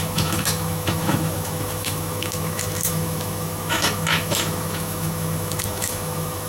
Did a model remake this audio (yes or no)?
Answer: yes